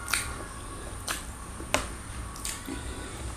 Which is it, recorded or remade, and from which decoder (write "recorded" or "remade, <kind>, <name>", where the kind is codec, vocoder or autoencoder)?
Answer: recorded